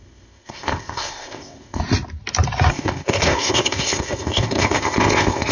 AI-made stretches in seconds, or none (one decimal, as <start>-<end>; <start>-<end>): 0.0-1.8; 2.7-5.5